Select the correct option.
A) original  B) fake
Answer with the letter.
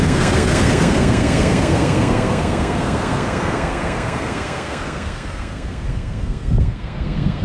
B